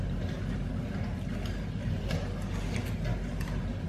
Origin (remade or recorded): recorded